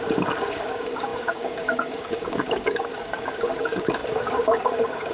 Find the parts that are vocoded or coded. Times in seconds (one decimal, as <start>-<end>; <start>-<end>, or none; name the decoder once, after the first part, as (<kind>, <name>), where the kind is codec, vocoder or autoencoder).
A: 0.0-5.1 (codec, DAC)